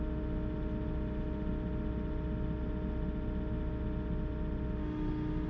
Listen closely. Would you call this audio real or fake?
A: real